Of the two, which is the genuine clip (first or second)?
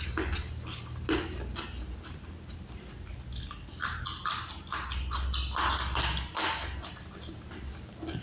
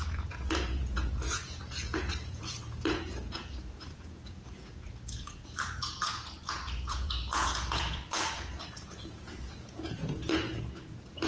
first